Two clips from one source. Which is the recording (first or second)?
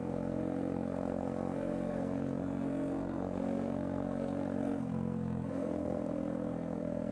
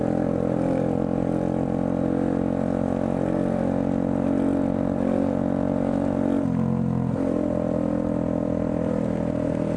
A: second